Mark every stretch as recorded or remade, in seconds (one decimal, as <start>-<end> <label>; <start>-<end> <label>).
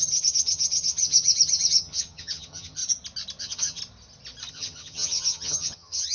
0.0-2.8 remade; 2.8-3.4 recorded; 3.4-3.8 remade; 3.8-4.5 recorded; 4.5-6.1 remade